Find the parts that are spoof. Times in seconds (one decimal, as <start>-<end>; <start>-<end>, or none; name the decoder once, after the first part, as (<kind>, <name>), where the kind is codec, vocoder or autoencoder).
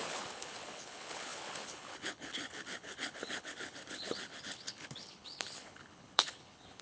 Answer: 0.0-6.8 (codec, HILCodec)